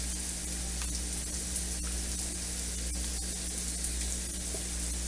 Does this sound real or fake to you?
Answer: real